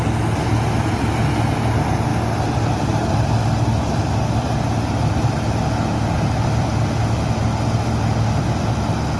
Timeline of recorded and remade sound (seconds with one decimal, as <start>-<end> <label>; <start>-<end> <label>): 0.0-9.2 recorded